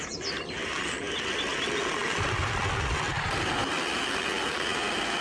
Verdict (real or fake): real